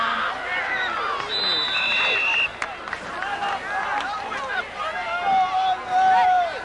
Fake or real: real